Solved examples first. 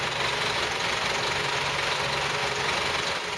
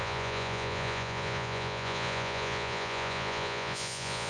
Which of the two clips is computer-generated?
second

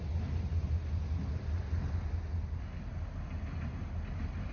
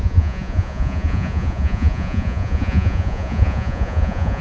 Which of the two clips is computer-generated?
second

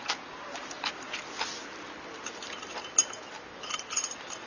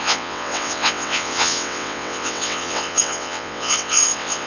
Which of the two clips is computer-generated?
second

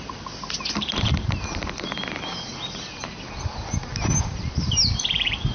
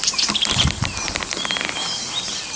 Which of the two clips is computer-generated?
second